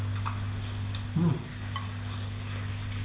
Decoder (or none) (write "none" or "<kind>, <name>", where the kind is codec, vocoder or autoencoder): none